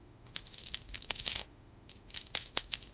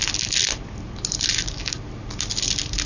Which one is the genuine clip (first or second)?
second